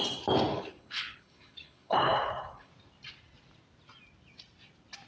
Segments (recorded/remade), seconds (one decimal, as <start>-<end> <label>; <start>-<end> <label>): 0.0-0.5 recorded; 0.5-2.7 remade; 2.7-5.1 recorded